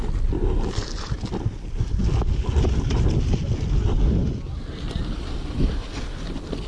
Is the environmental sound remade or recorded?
recorded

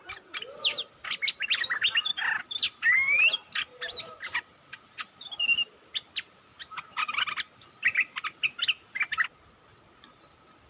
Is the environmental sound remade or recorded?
recorded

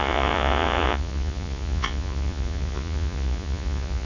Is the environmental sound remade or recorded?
remade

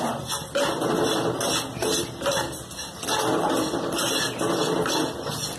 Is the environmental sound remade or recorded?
recorded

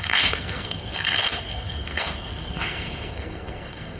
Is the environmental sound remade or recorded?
remade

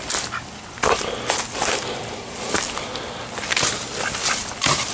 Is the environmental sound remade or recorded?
recorded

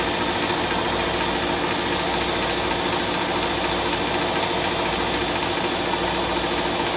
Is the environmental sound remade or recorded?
recorded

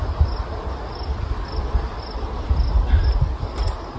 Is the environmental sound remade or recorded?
recorded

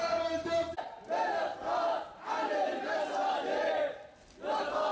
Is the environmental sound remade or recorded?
recorded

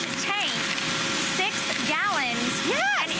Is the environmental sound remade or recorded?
recorded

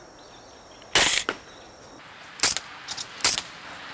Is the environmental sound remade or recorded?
recorded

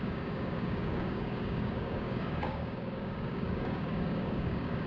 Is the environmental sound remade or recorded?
remade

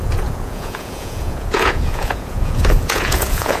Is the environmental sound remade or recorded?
remade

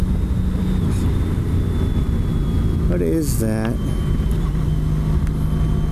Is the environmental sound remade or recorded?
recorded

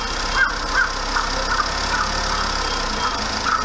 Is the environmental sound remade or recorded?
recorded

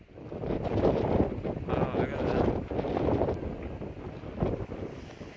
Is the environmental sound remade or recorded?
recorded